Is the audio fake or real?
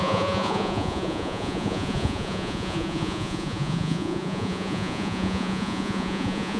fake